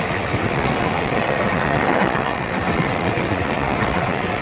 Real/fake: fake